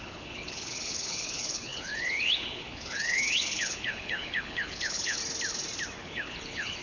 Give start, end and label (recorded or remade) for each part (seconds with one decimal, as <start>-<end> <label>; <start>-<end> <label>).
0.0-5.2 remade; 5.2-6.0 recorded; 6.0-6.8 remade